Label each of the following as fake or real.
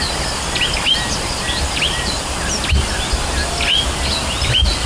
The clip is real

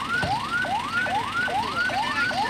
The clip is real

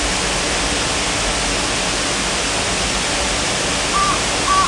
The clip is real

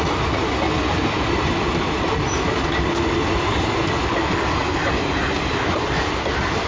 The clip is real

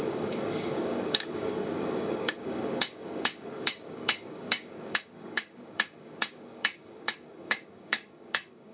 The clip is fake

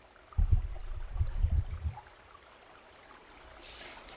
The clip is real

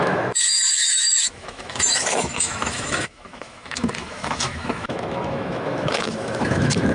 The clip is fake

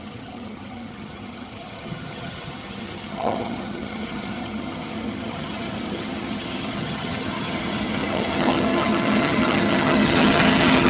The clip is fake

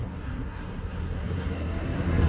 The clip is fake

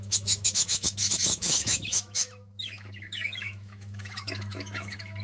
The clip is fake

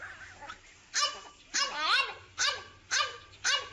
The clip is real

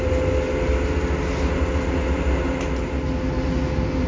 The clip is real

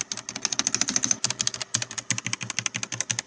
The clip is real